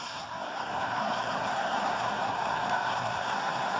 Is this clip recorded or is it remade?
remade